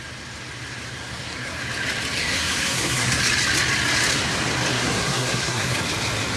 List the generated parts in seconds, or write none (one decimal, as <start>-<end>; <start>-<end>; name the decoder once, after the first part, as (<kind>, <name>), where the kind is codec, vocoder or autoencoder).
1.0-1.6 (codec, SNAC); 2.2-3.2; 4.7-5.8